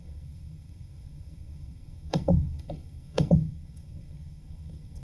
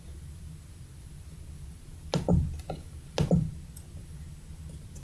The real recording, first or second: second